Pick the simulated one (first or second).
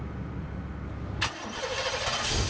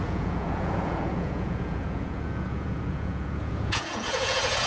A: second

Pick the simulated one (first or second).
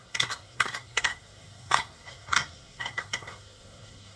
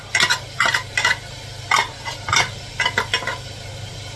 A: first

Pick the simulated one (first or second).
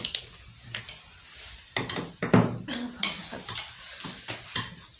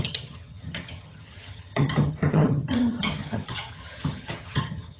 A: second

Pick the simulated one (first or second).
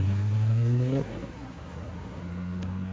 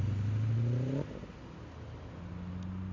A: first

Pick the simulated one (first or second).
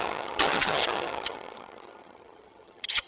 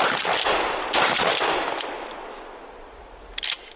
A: first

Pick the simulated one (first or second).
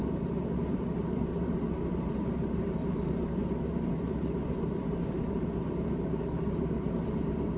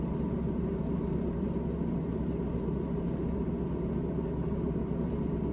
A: first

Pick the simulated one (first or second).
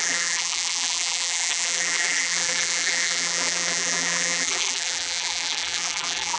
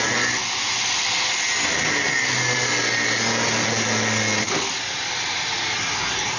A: first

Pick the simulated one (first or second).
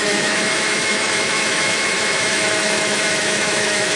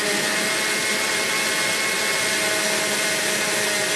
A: first